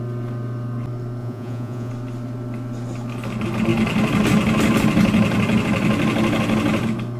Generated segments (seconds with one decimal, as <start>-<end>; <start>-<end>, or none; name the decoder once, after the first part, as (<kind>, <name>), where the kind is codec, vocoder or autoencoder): 1.2-1.9 (vocoder, Vocos)